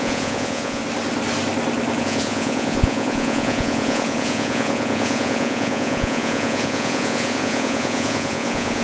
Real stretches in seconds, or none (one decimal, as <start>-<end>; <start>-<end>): 0.8-2.0